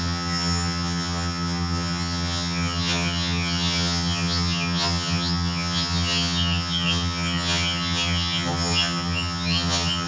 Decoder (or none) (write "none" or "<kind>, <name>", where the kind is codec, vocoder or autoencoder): vocoder, HiFi-GAN